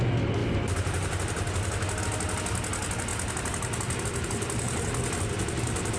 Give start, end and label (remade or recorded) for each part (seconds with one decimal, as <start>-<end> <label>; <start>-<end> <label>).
0.0-6.0 recorded